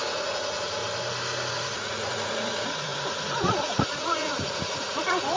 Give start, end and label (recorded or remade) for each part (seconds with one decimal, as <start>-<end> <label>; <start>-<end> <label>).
0.0-0.8 remade; 0.8-1.5 recorded; 1.5-5.4 remade